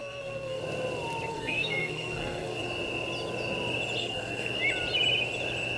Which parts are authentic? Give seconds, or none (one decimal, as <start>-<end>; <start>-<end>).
0.6-1.3; 2.6-4.0; 4.6-5.8